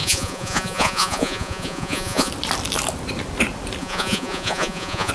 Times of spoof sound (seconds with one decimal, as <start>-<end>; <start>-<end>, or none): 0.0-2.3; 3.8-5.1